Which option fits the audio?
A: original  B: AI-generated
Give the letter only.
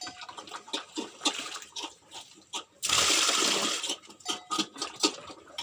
A